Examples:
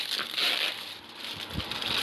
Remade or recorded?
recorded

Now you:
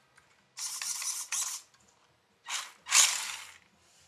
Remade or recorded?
recorded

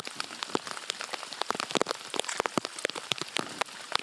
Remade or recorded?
recorded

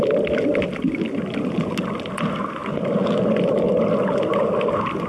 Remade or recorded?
recorded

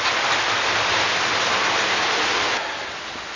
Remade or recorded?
recorded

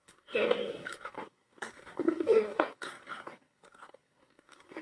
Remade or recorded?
remade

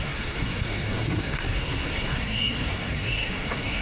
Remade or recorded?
remade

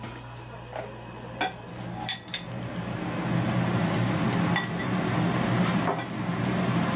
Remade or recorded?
recorded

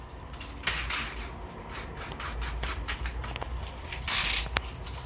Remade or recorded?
recorded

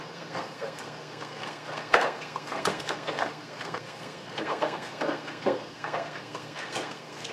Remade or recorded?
remade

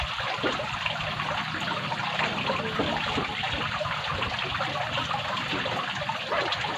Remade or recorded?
recorded